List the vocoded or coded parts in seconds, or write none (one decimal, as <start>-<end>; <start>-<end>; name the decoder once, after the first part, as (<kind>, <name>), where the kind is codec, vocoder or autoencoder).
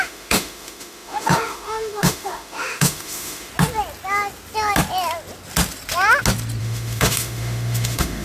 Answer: 0.0-3.5 (autoencoder, DAC-VAE); 6.6-8.2